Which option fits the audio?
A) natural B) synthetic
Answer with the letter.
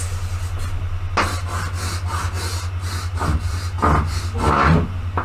A